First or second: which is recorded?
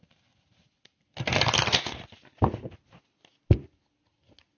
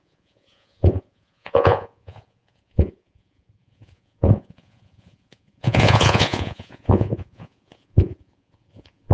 first